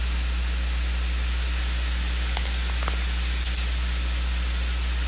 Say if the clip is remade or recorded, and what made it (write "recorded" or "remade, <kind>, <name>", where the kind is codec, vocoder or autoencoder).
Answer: recorded